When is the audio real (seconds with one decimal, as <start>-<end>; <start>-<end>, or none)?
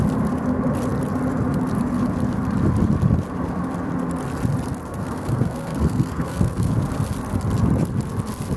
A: 0.0-4.9; 6.7-8.6